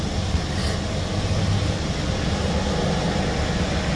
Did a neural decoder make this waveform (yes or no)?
no